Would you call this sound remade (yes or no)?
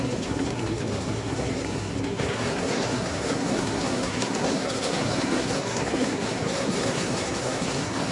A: yes